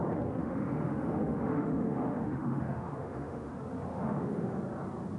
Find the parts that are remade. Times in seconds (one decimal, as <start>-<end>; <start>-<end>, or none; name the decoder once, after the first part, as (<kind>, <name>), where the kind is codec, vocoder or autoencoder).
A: 0.4-3.5 (autoencoder, DAC-VAE); 3.9-4.6